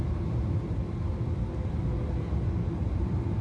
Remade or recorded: recorded